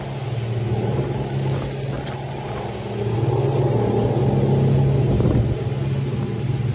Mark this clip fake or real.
real